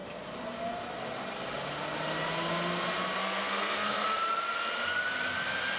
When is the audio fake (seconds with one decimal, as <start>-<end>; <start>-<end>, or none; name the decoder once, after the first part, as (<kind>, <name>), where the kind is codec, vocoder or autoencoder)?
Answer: 3.2-4.2 (codec, SNAC)